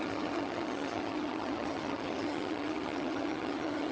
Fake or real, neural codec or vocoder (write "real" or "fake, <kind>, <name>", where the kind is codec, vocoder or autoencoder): fake, vocoder, HiFi-GAN